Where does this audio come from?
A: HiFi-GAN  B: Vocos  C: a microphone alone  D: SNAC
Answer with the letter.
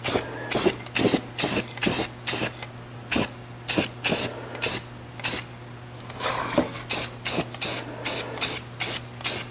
C